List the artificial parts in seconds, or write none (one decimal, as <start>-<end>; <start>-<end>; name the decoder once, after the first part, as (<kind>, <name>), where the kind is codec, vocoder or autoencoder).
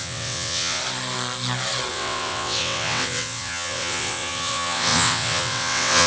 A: 0.0-0.8 (vocoder, WaveNeXt); 1.9-6.1